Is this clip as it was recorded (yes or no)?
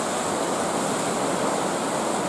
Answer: yes